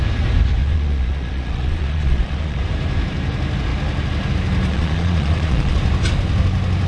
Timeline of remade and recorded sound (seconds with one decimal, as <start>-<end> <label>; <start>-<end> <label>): 0.0-0.6 recorded; 0.6-2.6 remade; 2.6-4.7 recorded; 4.7-5.8 remade; 5.8-6.9 recorded